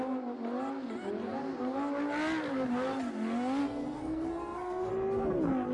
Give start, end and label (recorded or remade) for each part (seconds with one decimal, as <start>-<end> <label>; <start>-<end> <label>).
0.0-3.6 recorded; 3.6-4.9 remade; 4.9-5.7 recorded